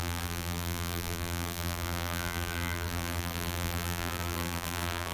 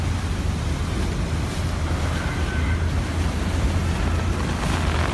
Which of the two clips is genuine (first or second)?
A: second